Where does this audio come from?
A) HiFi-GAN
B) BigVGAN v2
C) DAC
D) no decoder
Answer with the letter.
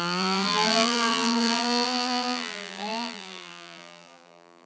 B